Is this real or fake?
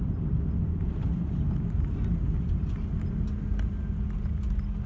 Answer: real